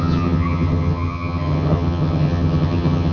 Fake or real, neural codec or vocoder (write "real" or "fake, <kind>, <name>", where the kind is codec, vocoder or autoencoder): fake, vocoder, HiFi-GAN